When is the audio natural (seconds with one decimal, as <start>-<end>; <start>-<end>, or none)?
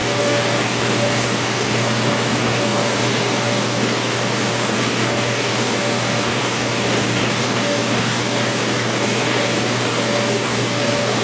none